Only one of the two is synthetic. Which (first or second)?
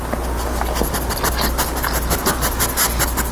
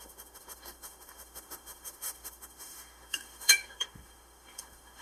second